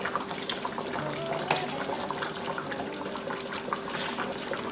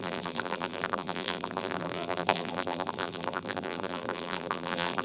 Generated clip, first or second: second